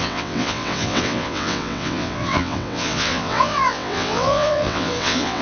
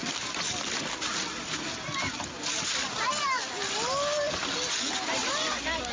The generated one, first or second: first